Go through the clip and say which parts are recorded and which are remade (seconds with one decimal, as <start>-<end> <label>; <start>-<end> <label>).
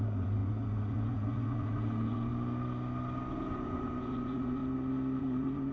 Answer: 0.0-2.3 remade; 2.3-3.5 recorded; 3.5-4.6 remade; 4.6-5.2 recorded; 5.2-5.7 remade